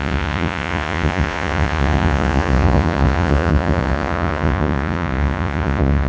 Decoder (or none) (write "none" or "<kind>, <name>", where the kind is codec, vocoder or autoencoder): vocoder, Vocos